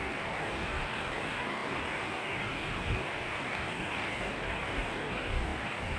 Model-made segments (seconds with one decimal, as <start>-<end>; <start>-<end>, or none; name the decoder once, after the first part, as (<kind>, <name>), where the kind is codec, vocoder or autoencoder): 0.0-6.0 (codec, DAC)